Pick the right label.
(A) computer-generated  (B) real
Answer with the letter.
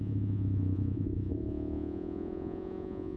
A